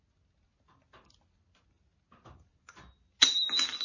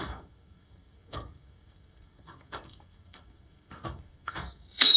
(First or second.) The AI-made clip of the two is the second